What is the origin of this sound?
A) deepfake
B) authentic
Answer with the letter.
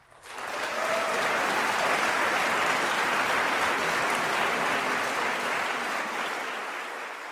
B